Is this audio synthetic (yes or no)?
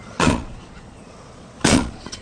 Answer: yes